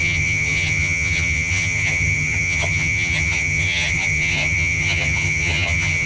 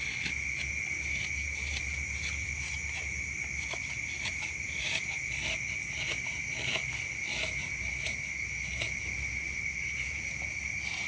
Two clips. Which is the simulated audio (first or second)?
first